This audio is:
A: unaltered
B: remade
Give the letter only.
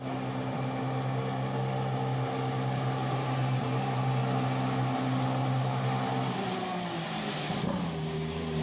A